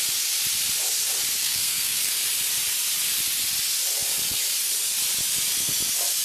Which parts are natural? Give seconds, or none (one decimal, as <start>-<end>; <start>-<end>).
0.0-1.4; 2.1-6.2